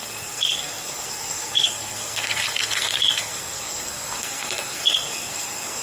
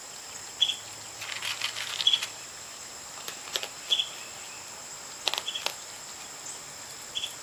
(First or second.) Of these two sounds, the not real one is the first